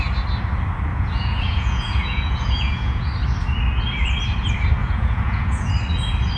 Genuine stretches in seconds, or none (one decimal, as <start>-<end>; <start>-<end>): 0.0-0.9; 3.1-4.8; 5.7-6.4